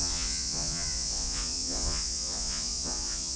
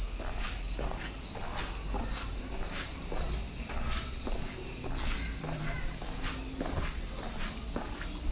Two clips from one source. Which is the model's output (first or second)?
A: first